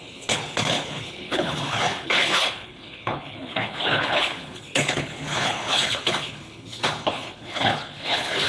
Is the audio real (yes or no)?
no